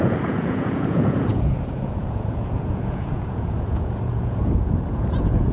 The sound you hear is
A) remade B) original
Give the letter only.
A